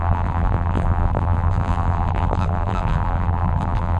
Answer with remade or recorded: remade